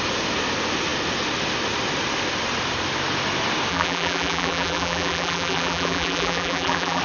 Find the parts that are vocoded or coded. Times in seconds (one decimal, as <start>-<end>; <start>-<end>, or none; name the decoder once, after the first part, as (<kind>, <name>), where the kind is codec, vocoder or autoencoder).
3.7-7.0 (vocoder, BigVGAN v2)